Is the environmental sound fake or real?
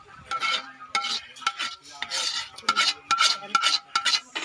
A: real